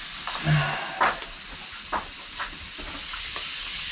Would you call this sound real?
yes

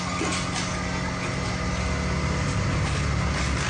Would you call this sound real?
yes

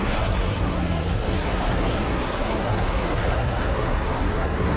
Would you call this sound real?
no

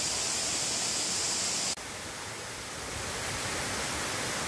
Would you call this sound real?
yes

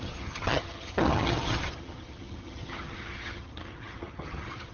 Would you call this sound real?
no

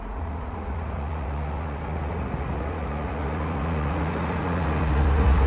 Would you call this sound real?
no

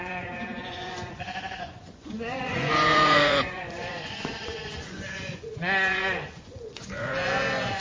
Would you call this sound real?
no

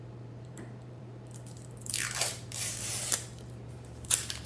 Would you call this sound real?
no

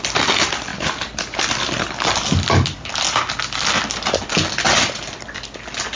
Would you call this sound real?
yes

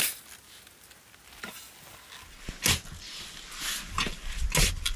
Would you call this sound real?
yes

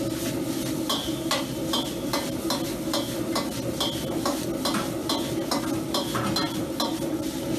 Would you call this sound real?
yes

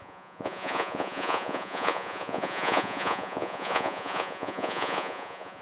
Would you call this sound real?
no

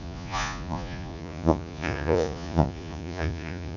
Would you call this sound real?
no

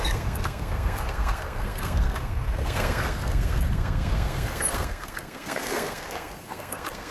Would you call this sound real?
no